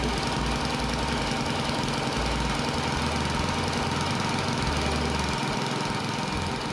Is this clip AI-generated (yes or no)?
no